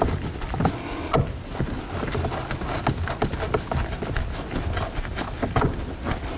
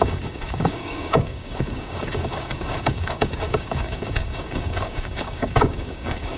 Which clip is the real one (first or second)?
first